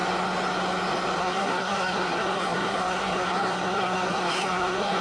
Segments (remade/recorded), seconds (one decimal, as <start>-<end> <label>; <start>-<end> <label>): 0.0-1.2 recorded; 1.2-5.0 remade